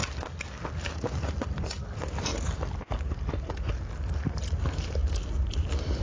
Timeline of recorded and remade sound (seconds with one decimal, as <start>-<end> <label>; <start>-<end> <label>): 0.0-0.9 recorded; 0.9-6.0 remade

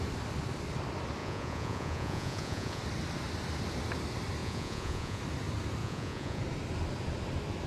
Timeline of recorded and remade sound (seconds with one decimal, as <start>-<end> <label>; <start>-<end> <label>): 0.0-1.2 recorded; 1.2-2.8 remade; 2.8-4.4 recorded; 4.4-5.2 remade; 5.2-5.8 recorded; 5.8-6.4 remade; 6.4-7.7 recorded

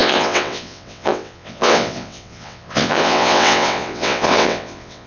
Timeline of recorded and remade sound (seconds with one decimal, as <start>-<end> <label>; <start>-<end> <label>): 0.0-5.1 remade

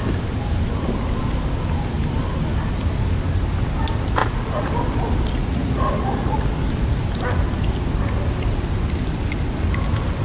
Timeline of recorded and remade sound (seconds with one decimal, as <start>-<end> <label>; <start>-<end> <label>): 0.0-4.2 recorded; 4.2-4.7 remade; 4.7-5.4 recorded; 5.4-6.4 remade; 6.4-10.2 recorded